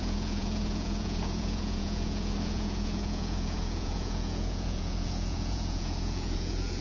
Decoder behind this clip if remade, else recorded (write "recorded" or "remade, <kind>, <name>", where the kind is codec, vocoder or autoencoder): remade, vocoder, Vocos